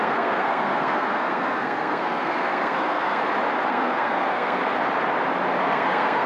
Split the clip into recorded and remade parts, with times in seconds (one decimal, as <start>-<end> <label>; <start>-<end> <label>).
0.0-3.2 remade; 3.2-3.7 recorded; 3.7-4.6 remade; 4.6-5.6 recorded; 5.6-6.3 remade